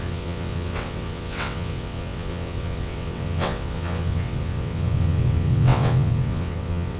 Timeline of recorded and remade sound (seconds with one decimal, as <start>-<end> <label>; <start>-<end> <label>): 0.0-7.0 remade